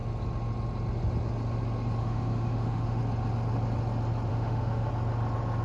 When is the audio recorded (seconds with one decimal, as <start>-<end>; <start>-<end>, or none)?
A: 0.0-2.0; 3.0-4.3; 4.9-5.6